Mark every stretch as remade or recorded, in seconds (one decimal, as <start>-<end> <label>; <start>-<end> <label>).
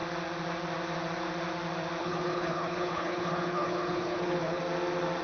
0.0-2.0 recorded; 2.0-4.6 remade; 4.6-5.2 recorded